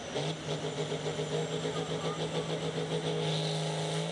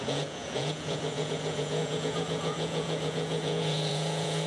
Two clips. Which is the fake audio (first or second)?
second